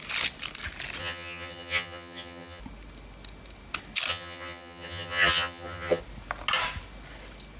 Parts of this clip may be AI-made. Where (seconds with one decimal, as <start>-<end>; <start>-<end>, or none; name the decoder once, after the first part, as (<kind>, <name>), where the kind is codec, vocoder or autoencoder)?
1.0-2.6 (vocoder, HiFi-GAN); 4.1-6.0